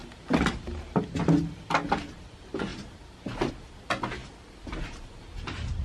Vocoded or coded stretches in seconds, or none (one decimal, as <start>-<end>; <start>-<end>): none